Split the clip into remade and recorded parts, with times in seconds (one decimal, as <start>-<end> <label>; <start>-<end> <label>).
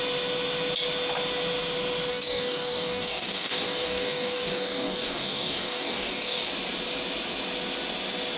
0.0-2.1 recorded; 2.1-6.5 remade; 6.5-8.4 recorded